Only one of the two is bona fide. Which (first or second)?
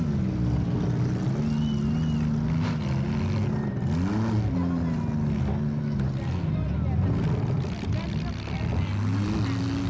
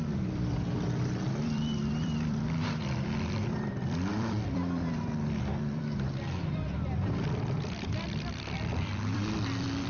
first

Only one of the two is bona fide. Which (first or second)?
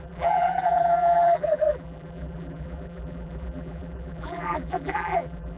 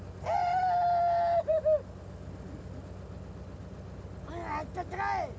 second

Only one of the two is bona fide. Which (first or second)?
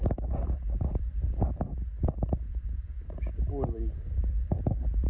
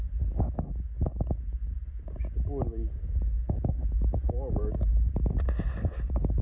second